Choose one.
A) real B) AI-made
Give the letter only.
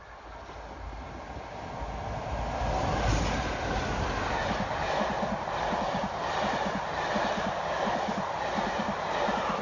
A